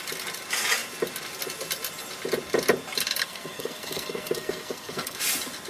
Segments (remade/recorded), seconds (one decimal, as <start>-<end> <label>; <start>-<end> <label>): 0.0-3.2 recorded; 3.2-5.2 remade; 5.2-5.7 recorded